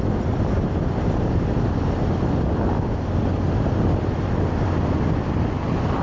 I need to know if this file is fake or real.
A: real